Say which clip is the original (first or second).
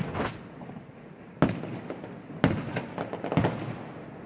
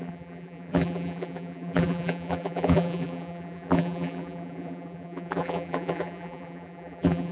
first